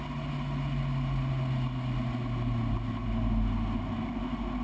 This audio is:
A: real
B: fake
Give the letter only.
A